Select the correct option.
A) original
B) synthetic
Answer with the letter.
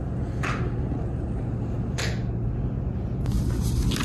A